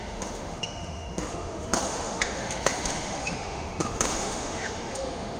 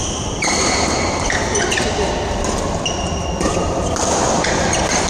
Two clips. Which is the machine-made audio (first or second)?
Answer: first